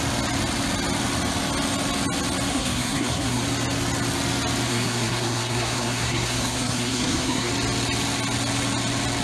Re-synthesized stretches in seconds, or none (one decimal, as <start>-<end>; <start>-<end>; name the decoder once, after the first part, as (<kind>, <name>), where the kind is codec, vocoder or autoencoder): 2.5-3.4 (codec, SNAC); 4.7-7.5